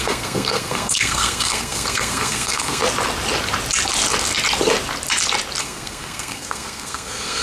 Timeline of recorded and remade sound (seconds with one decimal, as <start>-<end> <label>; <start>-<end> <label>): 0.0-2.8 remade; 2.8-5.6 recorded; 5.6-7.4 remade